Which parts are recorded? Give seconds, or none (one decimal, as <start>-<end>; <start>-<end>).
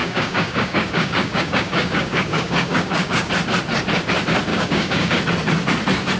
3.3-4.5; 5.2-6.2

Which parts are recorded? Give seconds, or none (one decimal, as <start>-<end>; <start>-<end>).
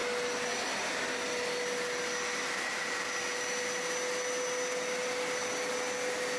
0.0-6.4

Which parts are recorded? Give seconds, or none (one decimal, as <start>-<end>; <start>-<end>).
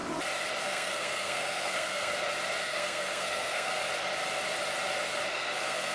0.0-0.6; 2.1-2.6; 3.7-5.3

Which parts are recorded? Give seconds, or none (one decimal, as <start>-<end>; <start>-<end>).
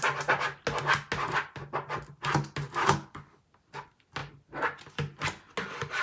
0.0-2.8; 3.4-6.0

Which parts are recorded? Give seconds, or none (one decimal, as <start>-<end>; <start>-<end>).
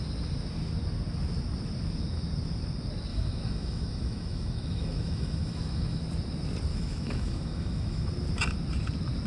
0.0-3.1; 6.0-6.7; 8.1-9.3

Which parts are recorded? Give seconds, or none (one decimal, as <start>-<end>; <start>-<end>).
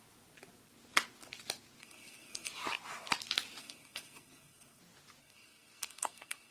0.0-1.8; 2.5-3.6; 4.8-5.2